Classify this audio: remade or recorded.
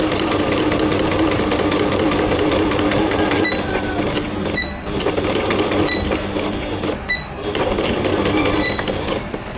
recorded